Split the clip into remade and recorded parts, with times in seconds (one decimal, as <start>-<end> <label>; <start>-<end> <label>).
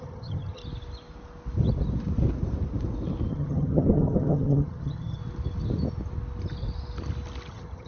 0.0-0.6 remade; 0.6-3.3 recorded; 3.3-5.2 remade; 5.2-7.5 recorded; 7.5-7.9 remade